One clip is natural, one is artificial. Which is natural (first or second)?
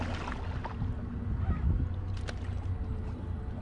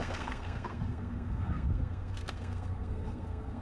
first